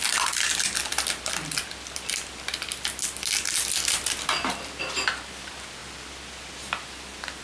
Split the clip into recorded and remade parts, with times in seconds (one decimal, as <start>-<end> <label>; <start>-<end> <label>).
0.0-7.4 recorded